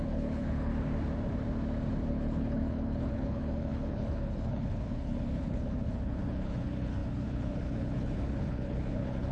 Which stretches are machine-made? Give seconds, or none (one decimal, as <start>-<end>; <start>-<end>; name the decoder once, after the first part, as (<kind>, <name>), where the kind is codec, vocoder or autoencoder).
0.0-0.7 (codec, HILCodec); 2.1-9.3